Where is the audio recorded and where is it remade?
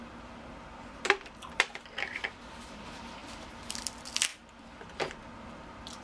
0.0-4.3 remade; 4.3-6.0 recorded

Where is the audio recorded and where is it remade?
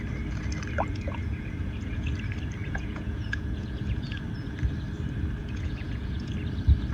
0.0-0.9 recorded; 0.9-2.1 remade; 2.1-2.6 recorded; 2.6-4.2 remade; 4.2-5.4 recorded; 5.4-6.3 remade; 6.3-6.9 recorded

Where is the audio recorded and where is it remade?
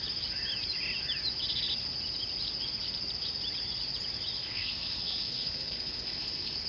0.0-4.4 recorded; 4.4-6.7 remade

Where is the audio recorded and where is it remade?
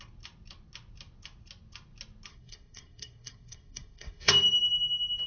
0.0-2.3 recorded; 2.3-4.3 remade; 4.3-5.3 recorded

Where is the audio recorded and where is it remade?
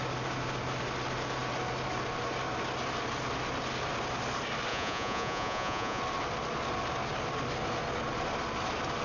0.0-4.7 recorded; 4.7-6.0 remade; 6.0-9.0 recorded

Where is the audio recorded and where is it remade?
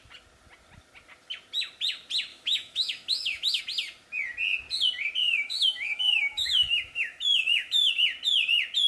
0.0-2.3 recorded; 2.3-3.6 remade; 3.6-5.2 recorded; 5.2-7.9 remade; 7.9-8.9 recorded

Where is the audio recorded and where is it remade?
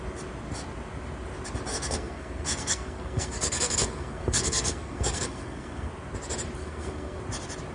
0.0-1.7 recorded; 1.7-5.9 remade; 5.9-6.6 recorded; 6.6-7.2 remade; 7.2-7.7 recorded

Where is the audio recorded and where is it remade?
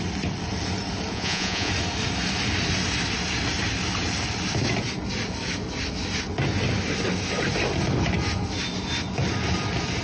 0.0-1.1 recorded; 1.1-1.7 remade; 1.7-10.0 recorded